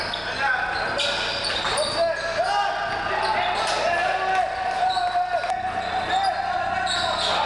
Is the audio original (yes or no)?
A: yes